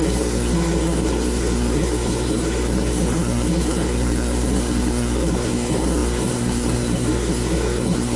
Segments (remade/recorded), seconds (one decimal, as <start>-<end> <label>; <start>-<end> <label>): 0.0-8.2 remade